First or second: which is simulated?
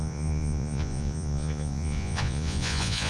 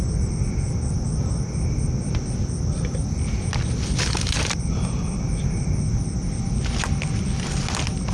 first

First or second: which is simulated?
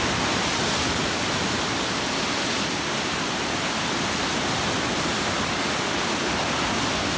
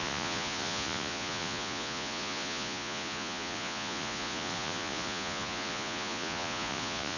second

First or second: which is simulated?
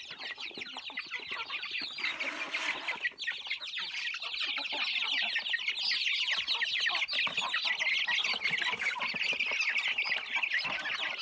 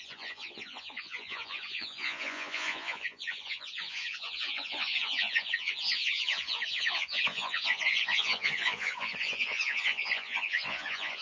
second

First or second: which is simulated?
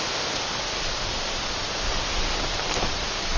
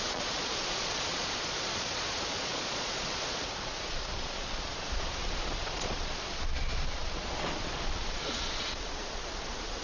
second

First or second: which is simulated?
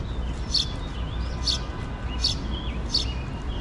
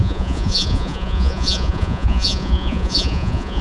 second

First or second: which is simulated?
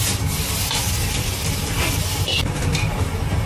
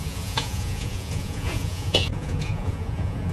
second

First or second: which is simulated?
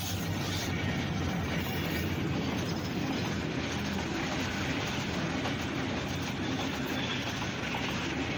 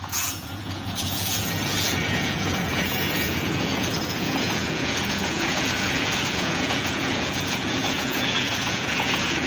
second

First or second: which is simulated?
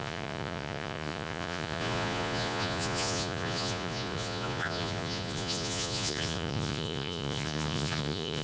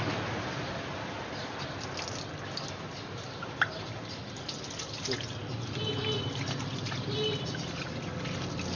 first